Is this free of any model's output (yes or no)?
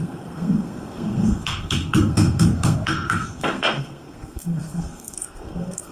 no